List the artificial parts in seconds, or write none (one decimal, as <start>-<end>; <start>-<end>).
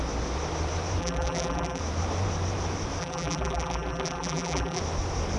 1.0-1.8; 3.0-4.8